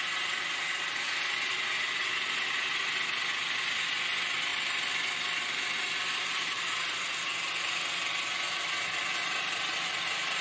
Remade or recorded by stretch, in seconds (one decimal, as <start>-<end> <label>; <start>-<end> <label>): 0.0-10.4 recorded